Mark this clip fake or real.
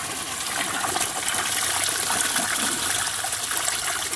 real